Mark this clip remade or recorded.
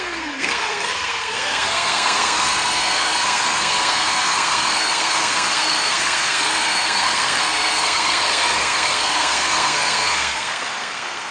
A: remade